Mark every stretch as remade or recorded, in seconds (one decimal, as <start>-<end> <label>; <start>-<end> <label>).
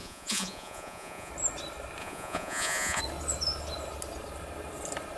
0.0-1.3 remade; 1.3-2.0 recorded; 2.0-3.0 remade; 3.0-5.2 recorded